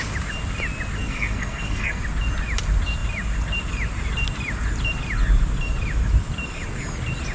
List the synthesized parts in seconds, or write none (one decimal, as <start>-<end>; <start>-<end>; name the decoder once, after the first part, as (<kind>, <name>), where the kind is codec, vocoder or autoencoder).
1.0-2.0 (codec, SNAC)